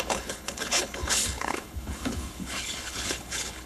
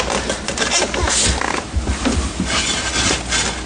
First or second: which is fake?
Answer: first